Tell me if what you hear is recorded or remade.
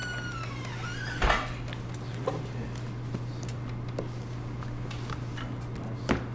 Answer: recorded